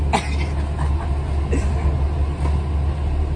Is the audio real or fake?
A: real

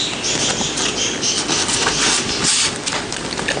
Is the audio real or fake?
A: real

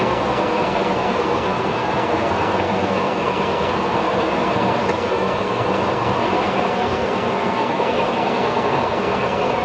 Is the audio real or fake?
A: fake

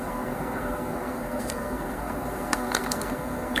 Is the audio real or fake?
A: fake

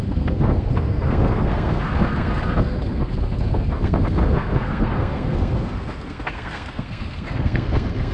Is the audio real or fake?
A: fake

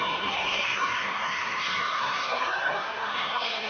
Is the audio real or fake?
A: fake